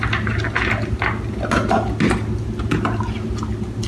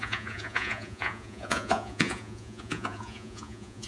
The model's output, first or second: second